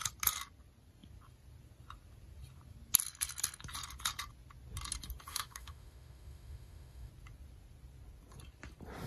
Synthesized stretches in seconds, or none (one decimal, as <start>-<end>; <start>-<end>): 5.3-7.1